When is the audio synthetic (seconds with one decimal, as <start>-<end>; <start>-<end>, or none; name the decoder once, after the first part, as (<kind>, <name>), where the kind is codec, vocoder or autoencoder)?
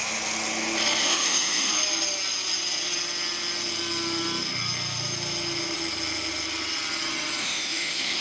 1.0-1.7 (autoencoder, DAC-VAE); 7.4-8.2